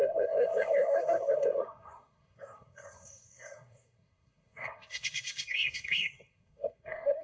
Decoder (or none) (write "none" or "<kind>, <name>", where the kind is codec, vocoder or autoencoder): codec, SNAC